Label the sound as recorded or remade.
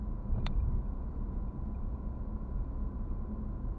remade